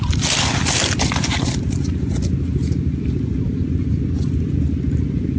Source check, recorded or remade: recorded